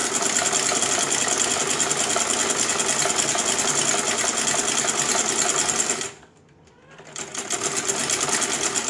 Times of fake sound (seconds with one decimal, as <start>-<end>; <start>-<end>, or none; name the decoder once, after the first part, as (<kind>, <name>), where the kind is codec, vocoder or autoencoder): none